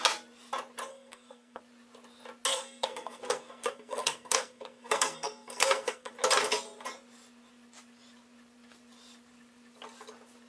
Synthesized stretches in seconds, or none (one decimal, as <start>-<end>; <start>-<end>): 0.9-1.6; 2.5-6.1